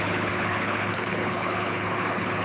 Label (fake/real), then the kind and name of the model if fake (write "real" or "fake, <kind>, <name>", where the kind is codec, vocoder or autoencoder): fake, codec, HILCodec